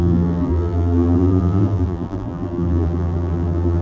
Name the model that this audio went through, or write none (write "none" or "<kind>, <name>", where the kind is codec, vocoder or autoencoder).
vocoder, BigVGAN v2